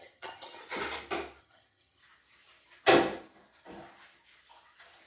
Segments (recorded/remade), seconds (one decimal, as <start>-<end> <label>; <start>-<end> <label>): 0.0-0.6 remade; 0.6-1.4 recorded; 1.4-2.0 remade; 2.0-5.1 recorded

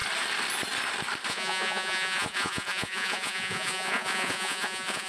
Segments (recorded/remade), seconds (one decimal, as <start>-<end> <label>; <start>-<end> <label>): 0.0-1.3 recorded; 1.3-5.1 remade

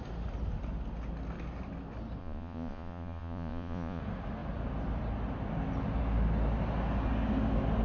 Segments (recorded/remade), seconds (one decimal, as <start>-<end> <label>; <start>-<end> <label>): 0.0-2.2 recorded; 2.2-4.0 remade; 4.0-7.8 recorded

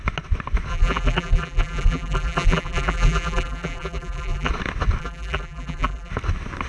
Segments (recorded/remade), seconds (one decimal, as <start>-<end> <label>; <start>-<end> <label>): 0.0-0.7 recorded; 0.7-4.5 remade; 4.5-5.0 recorded; 5.0-6.1 remade; 6.1-6.7 recorded

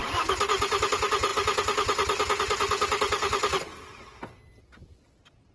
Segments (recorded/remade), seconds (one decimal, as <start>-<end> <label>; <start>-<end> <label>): 0.0-5.5 recorded

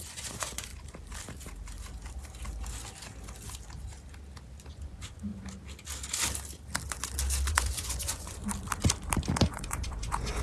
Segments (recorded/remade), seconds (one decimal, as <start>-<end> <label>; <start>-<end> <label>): 0.0-0.7 remade; 0.7-4.7 recorded; 4.7-5.3 remade; 5.3-7.5 recorded; 7.5-8.4 remade; 8.4-9.4 recorded; 9.4-10.4 remade

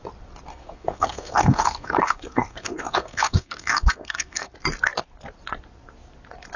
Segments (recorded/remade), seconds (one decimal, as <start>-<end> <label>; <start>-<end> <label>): 0.0-0.5 recorded; 0.5-4.5 remade; 4.5-6.6 recorded

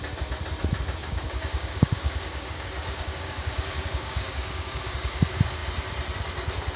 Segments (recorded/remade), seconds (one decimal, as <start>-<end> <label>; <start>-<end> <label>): 0.0-1.0 recorded; 1.0-5.1 remade; 5.1-6.8 recorded